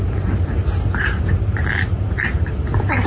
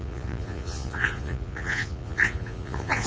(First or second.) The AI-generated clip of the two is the second